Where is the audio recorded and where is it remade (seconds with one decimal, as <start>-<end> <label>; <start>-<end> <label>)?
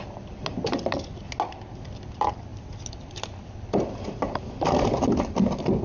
0.0-5.8 recorded